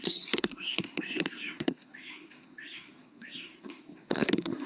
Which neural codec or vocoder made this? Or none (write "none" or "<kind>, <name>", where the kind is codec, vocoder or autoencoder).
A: codec, SNAC